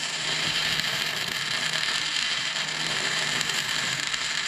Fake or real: fake